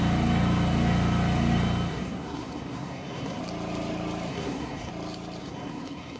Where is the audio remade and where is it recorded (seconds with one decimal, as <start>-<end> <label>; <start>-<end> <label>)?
0.0-1.9 recorded; 1.9-3.4 remade; 3.4-4.3 recorded; 4.3-4.9 remade; 4.9-5.4 recorded; 5.4-6.2 remade